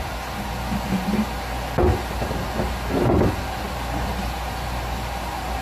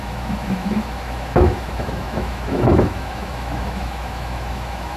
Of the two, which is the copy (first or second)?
second